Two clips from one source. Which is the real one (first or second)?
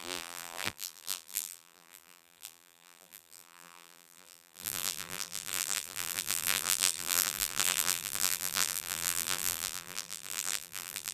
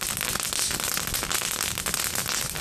second